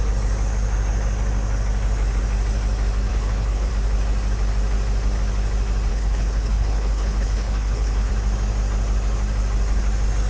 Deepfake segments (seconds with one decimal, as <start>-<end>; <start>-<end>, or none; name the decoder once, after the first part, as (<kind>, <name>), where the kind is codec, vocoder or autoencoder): 3.1-3.7 (codec, HILCodec); 5.9-8.1